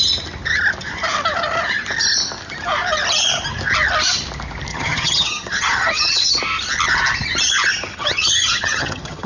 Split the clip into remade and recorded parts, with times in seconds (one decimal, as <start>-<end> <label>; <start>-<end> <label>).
0.0-4.7 recorded; 4.7-6.4 remade; 6.4-7.9 recorded; 7.9-9.3 remade

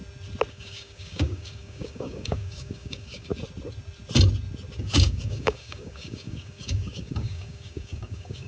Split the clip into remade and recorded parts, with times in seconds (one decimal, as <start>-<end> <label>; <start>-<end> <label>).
0.0-0.5 recorded; 0.5-3.3 remade; 3.3-4.8 recorded; 4.8-8.5 remade